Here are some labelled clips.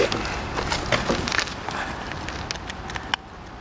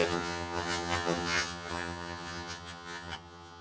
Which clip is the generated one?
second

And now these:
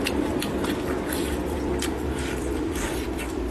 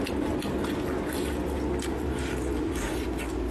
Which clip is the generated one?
first